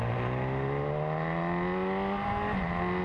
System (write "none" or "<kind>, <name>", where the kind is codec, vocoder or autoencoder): none